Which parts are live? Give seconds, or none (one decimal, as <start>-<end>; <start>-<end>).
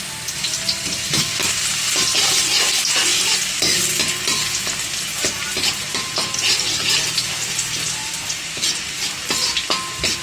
0.0-5.1; 6.1-8.0; 8.6-10.2